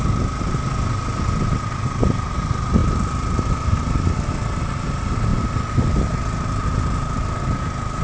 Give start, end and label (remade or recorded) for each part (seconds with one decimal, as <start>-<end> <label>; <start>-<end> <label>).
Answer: 0.0-8.0 recorded